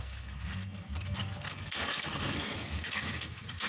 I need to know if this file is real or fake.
fake